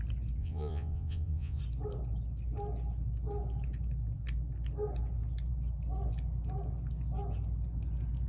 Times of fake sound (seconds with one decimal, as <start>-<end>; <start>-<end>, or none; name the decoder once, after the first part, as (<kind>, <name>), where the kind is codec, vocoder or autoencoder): 0.4-1.6 (vocoder, Vocos)